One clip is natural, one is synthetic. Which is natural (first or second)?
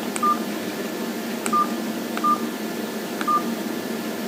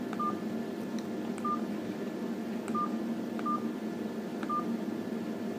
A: second